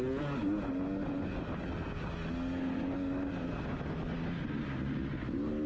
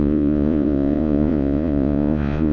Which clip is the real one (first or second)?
first